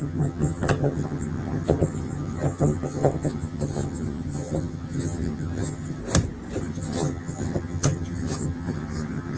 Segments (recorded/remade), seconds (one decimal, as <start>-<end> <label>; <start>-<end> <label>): 0.0-6.0 remade; 6.0-6.6 recorded; 6.6-9.4 remade